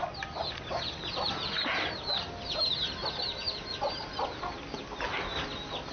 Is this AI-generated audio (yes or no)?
no